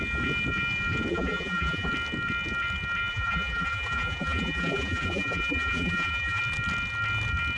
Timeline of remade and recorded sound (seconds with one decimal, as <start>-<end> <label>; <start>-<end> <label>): 0.0-1.1 recorded; 1.1-1.9 remade; 1.9-3.1 recorded; 3.1-6.4 remade; 6.4-7.6 recorded